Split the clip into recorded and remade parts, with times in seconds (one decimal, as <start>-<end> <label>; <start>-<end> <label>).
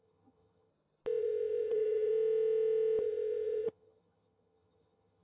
0.0-0.7 remade; 0.7-1.2 recorded; 1.2-2.1 remade; 2.1-3.0 recorded; 3.0-5.2 remade